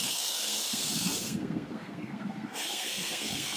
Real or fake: fake